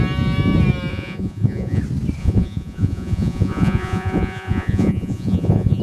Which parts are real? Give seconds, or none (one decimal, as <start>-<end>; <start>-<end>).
0.0-0.9; 1.8-2.2

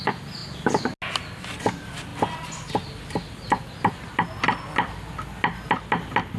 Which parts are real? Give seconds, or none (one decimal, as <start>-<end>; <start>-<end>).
0.0-6.4

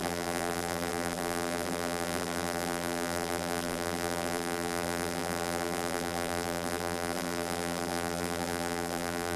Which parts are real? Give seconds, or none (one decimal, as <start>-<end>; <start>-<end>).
none

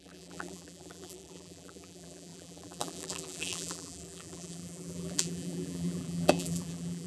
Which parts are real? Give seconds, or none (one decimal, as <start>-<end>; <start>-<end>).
none

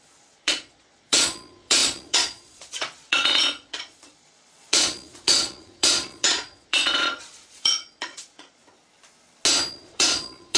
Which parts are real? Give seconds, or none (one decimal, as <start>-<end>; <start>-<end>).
8.6-9.7

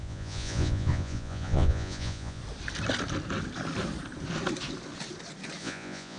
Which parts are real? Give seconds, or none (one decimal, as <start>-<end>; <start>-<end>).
2.4-5.6